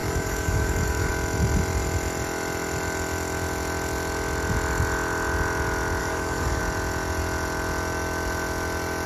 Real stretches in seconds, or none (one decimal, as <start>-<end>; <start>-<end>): 1.1-6.0; 6.6-9.1